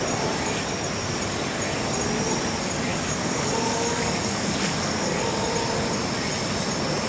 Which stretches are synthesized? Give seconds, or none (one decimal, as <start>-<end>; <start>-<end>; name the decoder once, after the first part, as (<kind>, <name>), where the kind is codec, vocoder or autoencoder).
2.9-5.4 (codec, DAC)